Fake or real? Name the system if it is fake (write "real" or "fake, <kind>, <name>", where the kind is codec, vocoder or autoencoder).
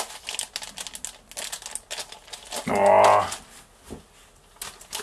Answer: real